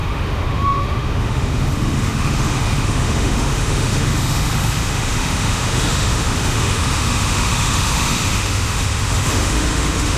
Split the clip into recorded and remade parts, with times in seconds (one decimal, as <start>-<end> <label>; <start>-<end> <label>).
0.0-10.2 remade